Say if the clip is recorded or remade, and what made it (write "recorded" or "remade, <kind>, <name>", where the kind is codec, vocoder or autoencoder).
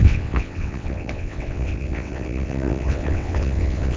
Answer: remade, vocoder, WaveNeXt